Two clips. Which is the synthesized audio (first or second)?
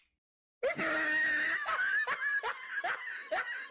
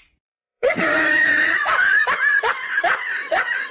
second